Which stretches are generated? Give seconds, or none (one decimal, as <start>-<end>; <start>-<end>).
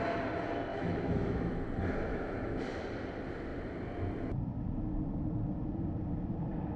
0.7-1.5; 2.1-2.6